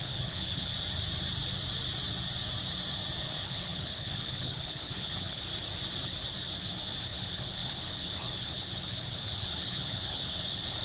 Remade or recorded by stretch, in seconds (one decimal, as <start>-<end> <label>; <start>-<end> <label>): 0.0-0.7 remade; 0.7-3.2 recorded; 3.2-5.5 remade; 5.5-7.0 recorded; 7.0-10.8 remade